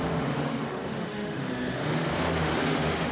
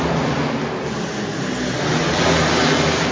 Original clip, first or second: second